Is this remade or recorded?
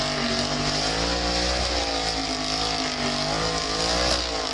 recorded